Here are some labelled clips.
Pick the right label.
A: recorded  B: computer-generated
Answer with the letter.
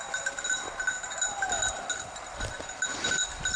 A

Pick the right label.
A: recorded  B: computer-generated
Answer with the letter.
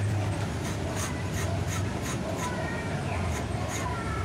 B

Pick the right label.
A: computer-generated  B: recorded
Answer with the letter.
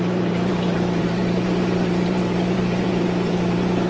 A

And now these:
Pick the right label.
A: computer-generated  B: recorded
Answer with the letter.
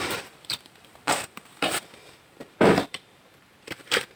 A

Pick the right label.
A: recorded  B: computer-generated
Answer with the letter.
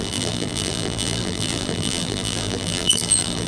B